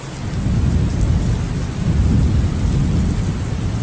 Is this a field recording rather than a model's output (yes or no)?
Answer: yes